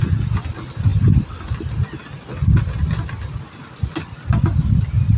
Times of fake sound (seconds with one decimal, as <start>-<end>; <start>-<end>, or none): 0.9-1.6